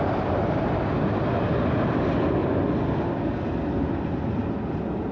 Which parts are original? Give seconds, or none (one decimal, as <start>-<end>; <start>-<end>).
0.0-5.1

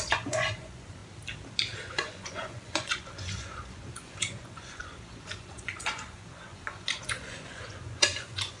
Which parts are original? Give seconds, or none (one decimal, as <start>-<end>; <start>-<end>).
1.0-1.9